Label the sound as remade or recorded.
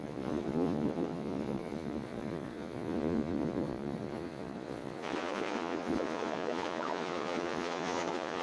remade